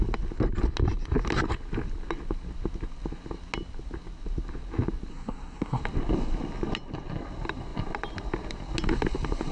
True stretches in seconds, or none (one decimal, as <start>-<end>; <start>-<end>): 0.0-5.1; 5.8-9.5